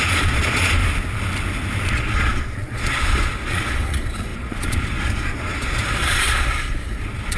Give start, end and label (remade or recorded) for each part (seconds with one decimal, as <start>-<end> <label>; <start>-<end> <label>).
0.0-0.8 remade; 0.8-1.9 recorded; 1.9-7.4 remade